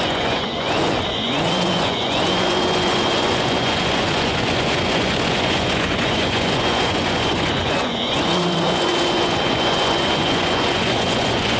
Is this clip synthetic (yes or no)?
yes